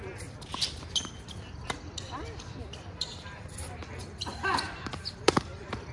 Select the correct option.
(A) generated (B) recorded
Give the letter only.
A